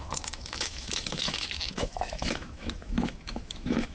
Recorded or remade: remade